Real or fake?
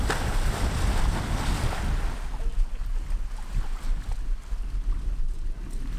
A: real